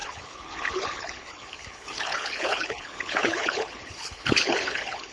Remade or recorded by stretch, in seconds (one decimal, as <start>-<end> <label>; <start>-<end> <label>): 0.0-5.1 remade